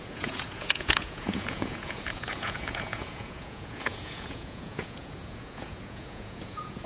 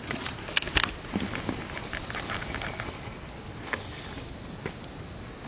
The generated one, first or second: first